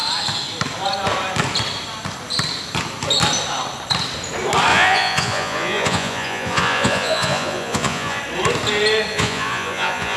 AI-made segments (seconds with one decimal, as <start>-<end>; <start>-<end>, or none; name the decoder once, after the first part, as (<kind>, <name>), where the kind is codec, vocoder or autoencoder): 4.7-8.2 (vocoder, Vocos); 9.1-10.2